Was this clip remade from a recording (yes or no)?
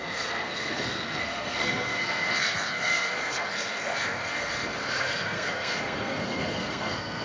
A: yes